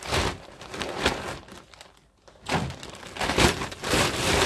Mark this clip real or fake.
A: real